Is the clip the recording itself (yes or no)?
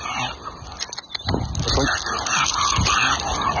yes